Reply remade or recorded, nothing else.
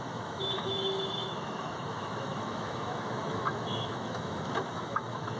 remade